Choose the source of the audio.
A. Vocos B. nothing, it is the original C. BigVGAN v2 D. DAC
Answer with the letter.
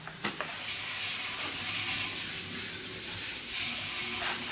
B